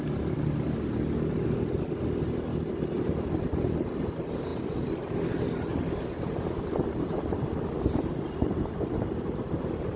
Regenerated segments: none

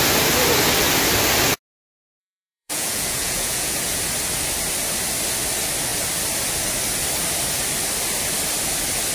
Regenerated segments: 2.2-4.0 (vocoder, Vocos)

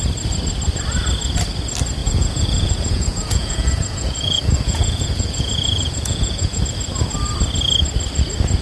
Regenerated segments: 2.0-6.6 (vocoder, Vocos)

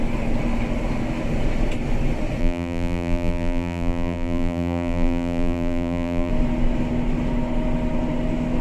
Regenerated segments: 2.4-6.3 (vocoder, BigVGAN v2)

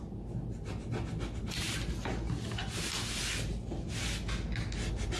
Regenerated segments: none